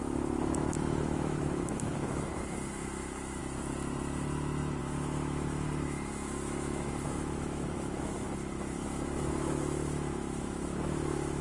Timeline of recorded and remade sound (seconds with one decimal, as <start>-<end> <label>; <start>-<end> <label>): 0.0-3.4 remade; 3.4-4.8 recorded; 4.8-11.4 remade